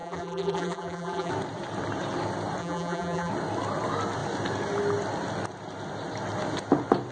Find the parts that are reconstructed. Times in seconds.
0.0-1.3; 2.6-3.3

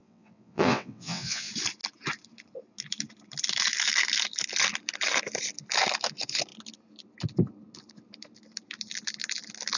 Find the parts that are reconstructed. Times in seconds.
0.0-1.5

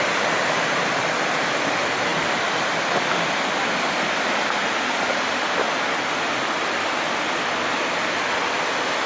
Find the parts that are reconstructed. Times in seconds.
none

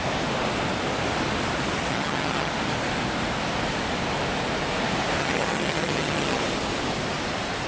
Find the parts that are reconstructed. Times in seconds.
1.9-2.5; 5.2-6.4